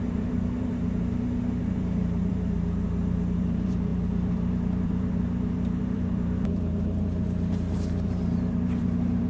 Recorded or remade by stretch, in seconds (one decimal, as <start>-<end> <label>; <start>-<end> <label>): 0.0-1.1 remade; 1.1-1.6 recorded; 1.6-9.3 remade